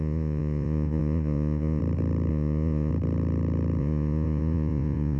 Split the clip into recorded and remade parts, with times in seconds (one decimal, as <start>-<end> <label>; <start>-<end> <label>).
0.0-1.8 remade; 1.8-2.3 recorded; 2.3-2.9 remade; 2.9-3.8 recorded; 3.8-5.2 remade